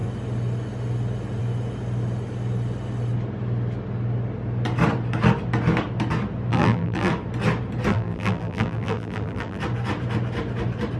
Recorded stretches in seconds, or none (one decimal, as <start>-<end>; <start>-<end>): 0.0-6.5; 7.1-7.9; 9.6-11.0